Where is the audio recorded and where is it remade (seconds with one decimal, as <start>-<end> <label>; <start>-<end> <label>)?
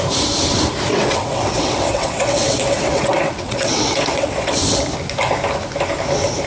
0.0-0.9 recorded; 0.9-4.8 remade; 4.8-6.5 recorded